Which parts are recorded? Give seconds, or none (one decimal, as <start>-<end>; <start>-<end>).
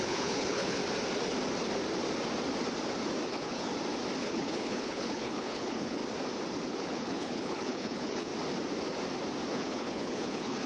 0.8-3.3; 3.7-4.2; 6.0-6.8; 8.3-9.5